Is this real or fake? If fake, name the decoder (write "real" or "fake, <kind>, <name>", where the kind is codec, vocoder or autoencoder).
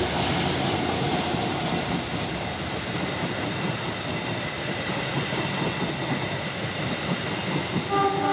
real